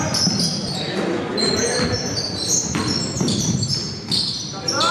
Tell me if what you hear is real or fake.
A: real